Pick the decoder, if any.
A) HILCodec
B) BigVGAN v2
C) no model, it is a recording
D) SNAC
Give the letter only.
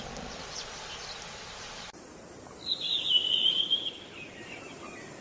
B